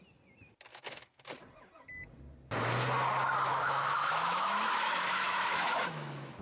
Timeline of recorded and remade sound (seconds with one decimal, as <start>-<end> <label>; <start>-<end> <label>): 0.0-0.7 recorded; 0.7-1.3 remade; 1.3-3.5 recorded; 3.5-6.4 remade